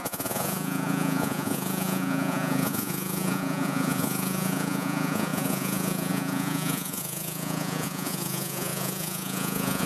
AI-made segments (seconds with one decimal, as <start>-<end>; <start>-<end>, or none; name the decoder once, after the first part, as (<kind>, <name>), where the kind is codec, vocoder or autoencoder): 0.0-9.9 (vocoder, Vocos)